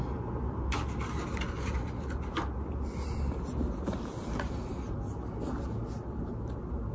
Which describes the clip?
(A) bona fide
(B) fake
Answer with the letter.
A